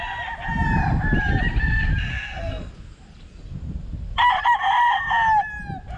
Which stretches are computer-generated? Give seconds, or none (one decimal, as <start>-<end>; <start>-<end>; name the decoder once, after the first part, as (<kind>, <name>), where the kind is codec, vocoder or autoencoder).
2.1-2.7 (codec, SNAC)